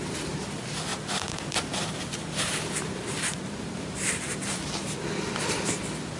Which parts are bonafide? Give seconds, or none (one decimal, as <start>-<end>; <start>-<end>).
0.0-0.9; 4.6-6.2